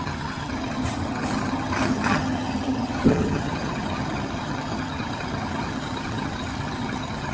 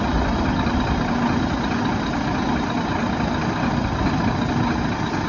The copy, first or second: first